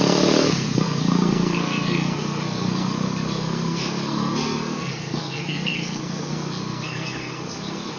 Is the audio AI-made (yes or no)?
yes